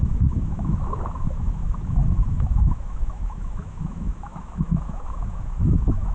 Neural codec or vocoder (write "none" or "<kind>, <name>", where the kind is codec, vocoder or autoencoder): autoencoder, DAC-VAE